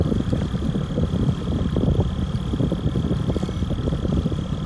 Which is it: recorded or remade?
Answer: recorded